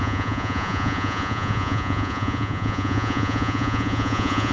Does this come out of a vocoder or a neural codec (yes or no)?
yes